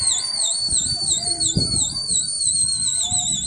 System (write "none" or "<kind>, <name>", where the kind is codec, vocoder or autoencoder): none